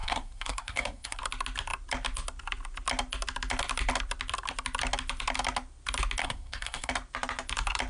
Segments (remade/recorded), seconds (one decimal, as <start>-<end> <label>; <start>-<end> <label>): 0.0-1.2 remade; 1.2-6.2 recorded; 6.2-6.9 remade; 6.9-7.9 recorded

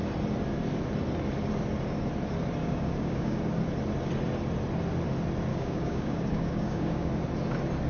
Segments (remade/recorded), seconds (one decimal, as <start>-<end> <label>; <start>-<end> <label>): 0.0-2.6 recorded; 2.6-3.4 remade; 3.4-5.5 recorded; 5.5-7.1 remade; 7.1-7.9 recorded

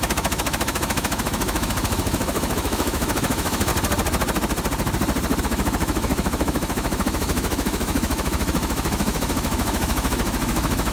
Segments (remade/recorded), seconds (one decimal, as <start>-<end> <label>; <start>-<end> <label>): 0.0-3.7 remade; 3.7-5.4 recorded; 5.4-10.9 remade

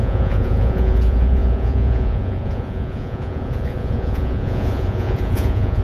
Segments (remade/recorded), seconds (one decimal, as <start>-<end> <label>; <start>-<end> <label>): 0.0-5.8 remade

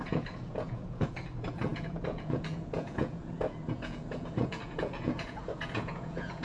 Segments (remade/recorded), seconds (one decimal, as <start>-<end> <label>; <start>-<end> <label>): 0.0-6.4 remade

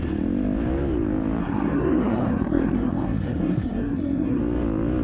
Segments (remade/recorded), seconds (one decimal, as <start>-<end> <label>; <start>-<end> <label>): 0.0-1.4 recorded; 1.4-4.4 remade; 4.4-5.0 recorded

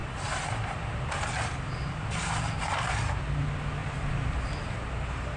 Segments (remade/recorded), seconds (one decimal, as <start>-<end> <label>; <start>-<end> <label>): 0.0-3.2 remade; 3.2-3.8 recorded; 3.8-5.4 remade

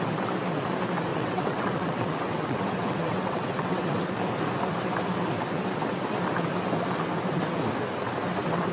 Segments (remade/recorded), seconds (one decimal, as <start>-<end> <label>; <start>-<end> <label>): 0.0-1.1 recorded; 1.1-4.0 remade; 4.0-8.7 recorded